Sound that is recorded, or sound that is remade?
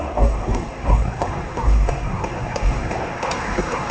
remade